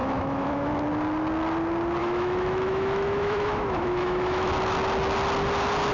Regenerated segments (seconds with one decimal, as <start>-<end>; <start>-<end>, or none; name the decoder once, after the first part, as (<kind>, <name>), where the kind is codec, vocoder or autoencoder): 0.0-0.7 (autoencoder, DAC-VAE); 2.0-4.5